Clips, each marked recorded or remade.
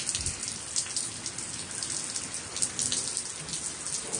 recorded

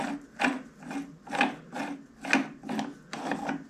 recorded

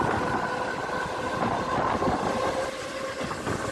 recorded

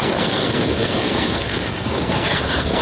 remade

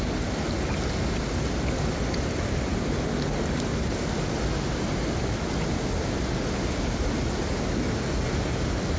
recorded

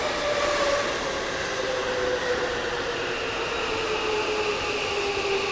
recorded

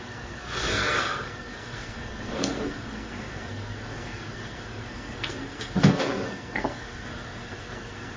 remade